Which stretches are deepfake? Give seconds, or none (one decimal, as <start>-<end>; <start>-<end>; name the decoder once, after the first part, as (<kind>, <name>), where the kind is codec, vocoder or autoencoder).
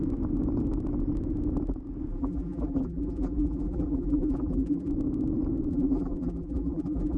2.1-4.9 (vocoder, BigVGAN v2); 5.7-7.2